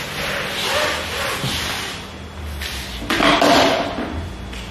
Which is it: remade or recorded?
recorded